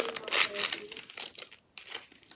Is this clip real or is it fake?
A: real